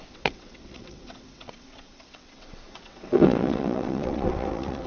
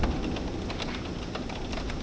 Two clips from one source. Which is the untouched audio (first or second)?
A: second